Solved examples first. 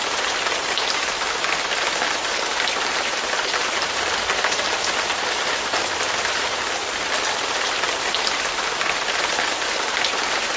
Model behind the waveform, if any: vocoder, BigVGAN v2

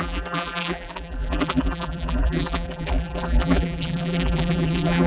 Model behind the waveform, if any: vocoder, BigVGAN v2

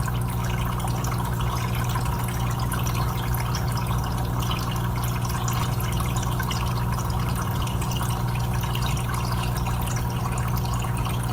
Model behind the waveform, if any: none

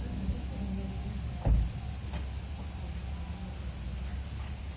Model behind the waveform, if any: none